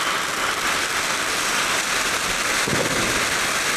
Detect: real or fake real